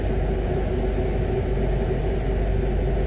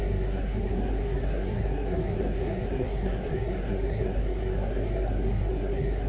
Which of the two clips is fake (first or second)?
second